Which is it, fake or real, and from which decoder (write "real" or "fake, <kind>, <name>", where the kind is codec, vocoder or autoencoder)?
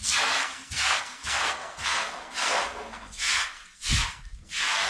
fake, codec, SNAC